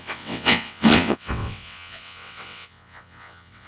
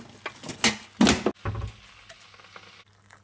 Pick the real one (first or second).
second